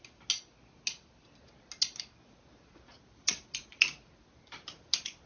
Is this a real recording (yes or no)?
yes